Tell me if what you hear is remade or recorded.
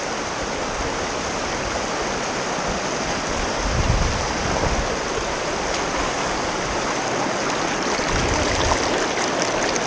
recorded